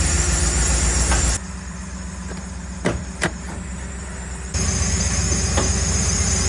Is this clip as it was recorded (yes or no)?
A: yes